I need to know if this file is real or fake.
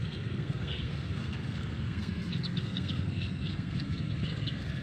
fake